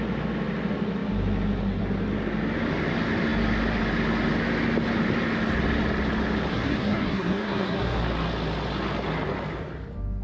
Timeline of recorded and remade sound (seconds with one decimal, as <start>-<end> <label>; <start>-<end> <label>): 0.0-6.5 recorded; 6.5-8.0 remade; 8.0-10.2 recorded